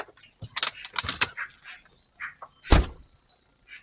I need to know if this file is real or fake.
real